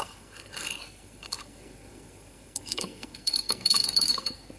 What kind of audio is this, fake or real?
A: fake